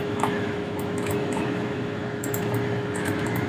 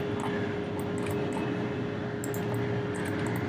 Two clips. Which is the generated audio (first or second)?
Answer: first